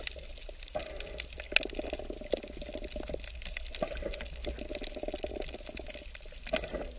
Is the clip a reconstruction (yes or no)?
no